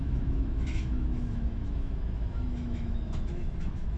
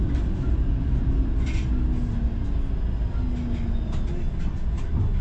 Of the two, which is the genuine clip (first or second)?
second